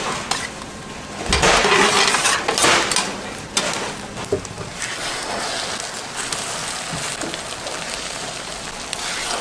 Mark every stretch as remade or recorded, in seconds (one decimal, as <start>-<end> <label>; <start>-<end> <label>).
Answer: 0.0-9.4 recorded